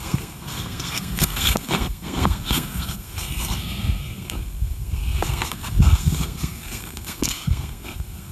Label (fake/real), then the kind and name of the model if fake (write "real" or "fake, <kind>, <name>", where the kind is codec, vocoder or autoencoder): fake, codec, SNAC